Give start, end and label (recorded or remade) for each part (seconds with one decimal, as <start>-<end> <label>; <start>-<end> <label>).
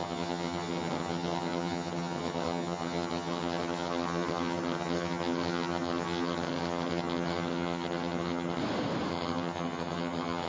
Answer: 0.0-8.6 remade; 8.6-9.1 recorded; 9.1-10.5 remade